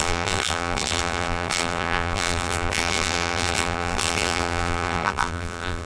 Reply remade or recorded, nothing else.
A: remade